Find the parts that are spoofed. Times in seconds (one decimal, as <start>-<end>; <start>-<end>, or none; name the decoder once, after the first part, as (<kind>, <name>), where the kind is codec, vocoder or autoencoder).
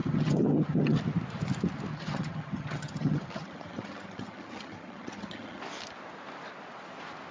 0.0-1.0 (vocoder, HiFi-GAN); 1.9-5.6